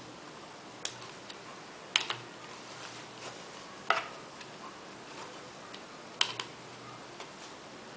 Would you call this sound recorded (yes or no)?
yes